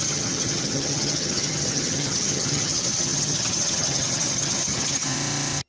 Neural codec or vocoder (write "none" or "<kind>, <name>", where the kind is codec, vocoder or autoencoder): vocoder, HiFi-GAN